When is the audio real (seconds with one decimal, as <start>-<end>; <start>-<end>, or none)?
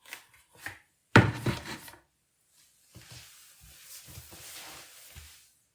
0.0-1.0; 3.1-5.7